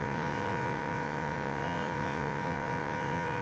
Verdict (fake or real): fake